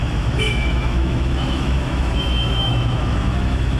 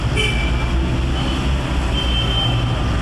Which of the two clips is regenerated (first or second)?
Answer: first